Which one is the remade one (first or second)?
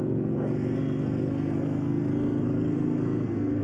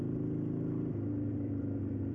first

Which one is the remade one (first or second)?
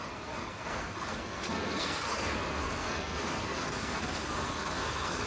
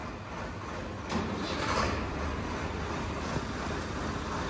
first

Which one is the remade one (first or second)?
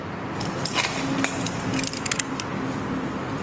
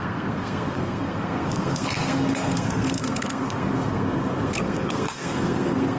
second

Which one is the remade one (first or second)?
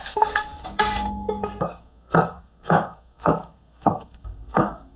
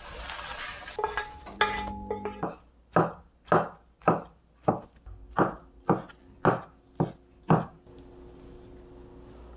first